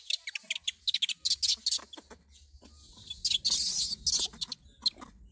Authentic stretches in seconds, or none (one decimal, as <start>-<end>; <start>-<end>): 0.0-5.3